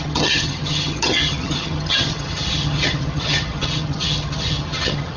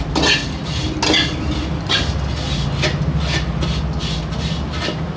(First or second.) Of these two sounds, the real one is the second